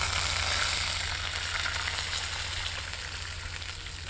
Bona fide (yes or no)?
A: yes